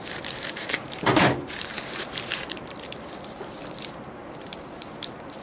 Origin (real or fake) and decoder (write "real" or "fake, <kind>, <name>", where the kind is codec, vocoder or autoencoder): fake, vocoder, BigVGAN v2